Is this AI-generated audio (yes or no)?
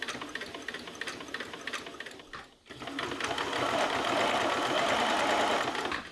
no